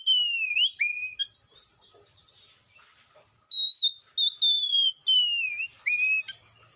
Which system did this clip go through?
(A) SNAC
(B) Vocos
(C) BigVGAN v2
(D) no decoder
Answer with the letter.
D